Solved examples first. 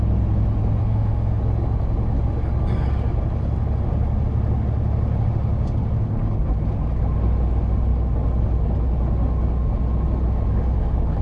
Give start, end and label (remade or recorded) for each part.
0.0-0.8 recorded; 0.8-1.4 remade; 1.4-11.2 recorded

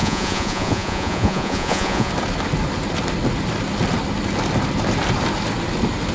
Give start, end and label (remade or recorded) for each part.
0.0-2.1 remade; 2.1-6.1 recorded

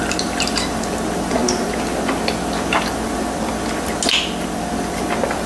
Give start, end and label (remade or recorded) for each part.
0.0-5.5 recorded

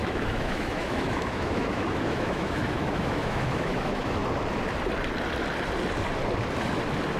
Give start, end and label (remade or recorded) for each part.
0.0-4.2 remade; 4.2-7.2 recorded

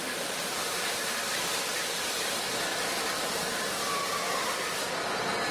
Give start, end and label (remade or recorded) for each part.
0.0-1.2 remade; 1.2-1.8 recorded; 1.8-2.7 remade; 2.7-5.5 recorded